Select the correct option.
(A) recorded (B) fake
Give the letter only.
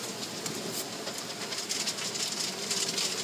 A